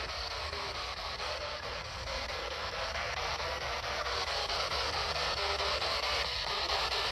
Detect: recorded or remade remade